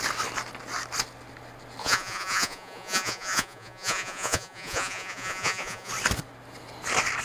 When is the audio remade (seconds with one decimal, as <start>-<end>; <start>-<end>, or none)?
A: 1.8-5.9